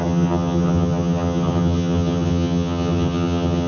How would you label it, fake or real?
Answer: fake